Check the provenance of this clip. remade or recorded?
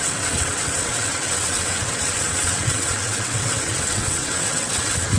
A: remade